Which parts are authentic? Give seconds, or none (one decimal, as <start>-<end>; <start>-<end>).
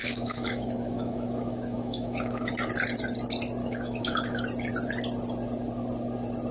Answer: 2.5-3.6; 4.4-6.5